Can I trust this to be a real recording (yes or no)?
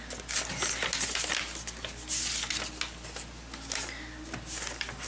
yes